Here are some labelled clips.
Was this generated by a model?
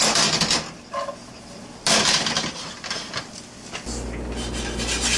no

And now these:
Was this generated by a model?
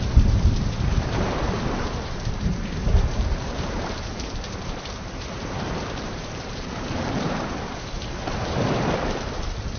yes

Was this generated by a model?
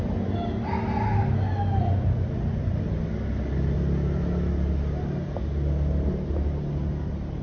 no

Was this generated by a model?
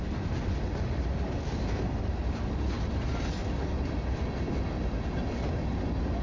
no